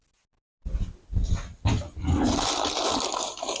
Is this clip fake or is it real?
real